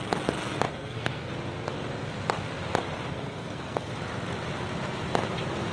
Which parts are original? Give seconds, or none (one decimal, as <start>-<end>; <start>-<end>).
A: 0.0-0.7; 1.3-3.1; 3.9-5.7